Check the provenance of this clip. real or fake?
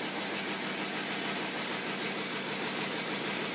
real